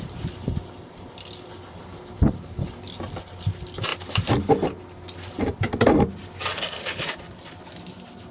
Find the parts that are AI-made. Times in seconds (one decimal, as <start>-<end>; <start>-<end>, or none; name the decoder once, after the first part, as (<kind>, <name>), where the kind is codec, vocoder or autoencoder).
none

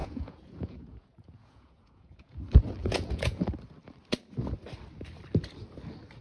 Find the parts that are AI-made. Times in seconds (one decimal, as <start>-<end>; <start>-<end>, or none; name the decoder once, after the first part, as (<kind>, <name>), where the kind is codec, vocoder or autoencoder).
0.0-2.4 (vocoder, Vocos); 2.8-3.4

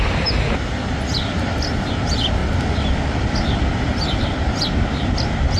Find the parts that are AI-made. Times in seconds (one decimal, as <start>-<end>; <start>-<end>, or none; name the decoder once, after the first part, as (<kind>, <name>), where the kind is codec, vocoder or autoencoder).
none

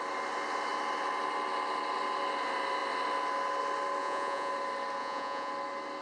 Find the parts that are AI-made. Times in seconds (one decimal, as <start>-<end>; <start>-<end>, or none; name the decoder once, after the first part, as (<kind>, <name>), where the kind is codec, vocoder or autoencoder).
4.0-4.5 (vocoder, Vocos); 5.0-5.5

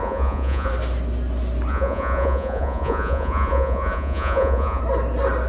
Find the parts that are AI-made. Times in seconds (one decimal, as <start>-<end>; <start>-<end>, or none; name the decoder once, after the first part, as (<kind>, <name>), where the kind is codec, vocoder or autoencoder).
0.0-0.7 (vocoder, Vocos); 1.7-4.8

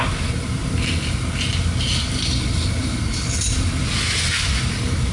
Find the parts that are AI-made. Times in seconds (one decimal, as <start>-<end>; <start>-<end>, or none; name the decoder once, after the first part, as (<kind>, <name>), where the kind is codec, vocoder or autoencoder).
none

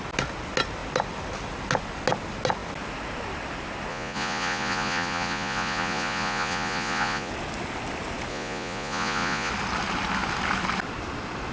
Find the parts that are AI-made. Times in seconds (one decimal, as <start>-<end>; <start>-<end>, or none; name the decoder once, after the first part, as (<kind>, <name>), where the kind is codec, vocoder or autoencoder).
3.9-7.3 (vocoder, Vocos); 8.3-9.5